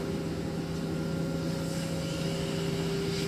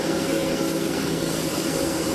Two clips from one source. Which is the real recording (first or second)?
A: first